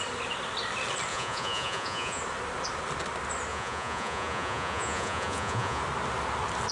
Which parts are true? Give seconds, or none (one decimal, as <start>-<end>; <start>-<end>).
0.0-1.1; 2.2-3.5; 5.8-6.7